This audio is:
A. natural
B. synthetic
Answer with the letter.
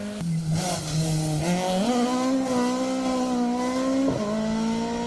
A